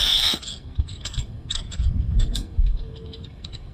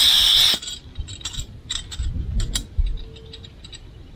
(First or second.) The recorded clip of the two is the second